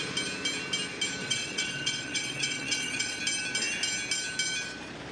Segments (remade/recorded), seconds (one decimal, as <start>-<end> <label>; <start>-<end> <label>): 0.0-1.2 recorded; 1.2-3.2 remade; 3.2-5.1 recorded